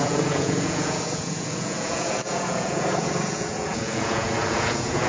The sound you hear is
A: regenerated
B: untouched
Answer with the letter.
A